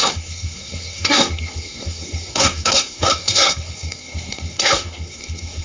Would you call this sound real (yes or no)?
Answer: no